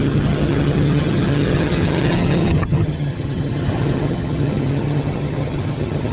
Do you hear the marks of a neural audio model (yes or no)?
yes